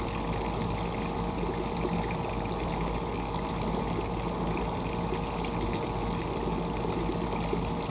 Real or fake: real